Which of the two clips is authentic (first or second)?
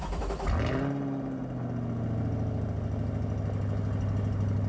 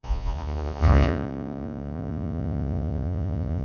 first